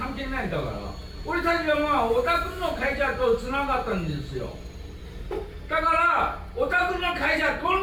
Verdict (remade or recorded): recorded